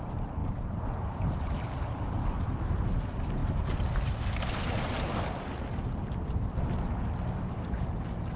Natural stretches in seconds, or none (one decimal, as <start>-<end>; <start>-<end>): 3.4-7.7